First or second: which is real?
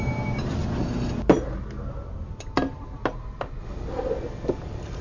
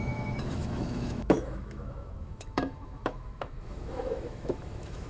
first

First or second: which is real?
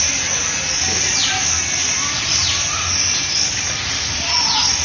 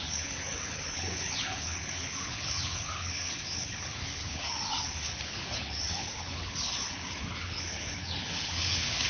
first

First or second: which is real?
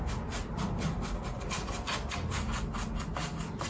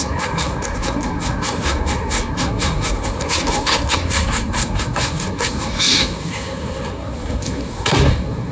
first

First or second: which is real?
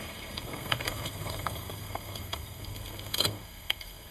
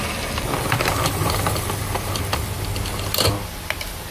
second